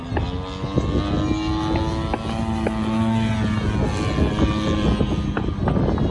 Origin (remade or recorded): recorded